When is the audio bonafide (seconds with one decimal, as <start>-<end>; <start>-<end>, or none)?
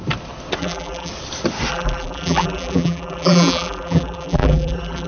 0.0-0.6; 1.1-1.7